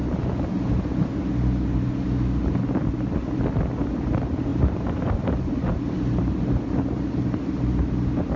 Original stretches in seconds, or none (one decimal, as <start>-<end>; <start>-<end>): 0.0-4.5; 6.5-8.4